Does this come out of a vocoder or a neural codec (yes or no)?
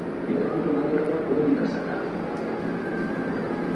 no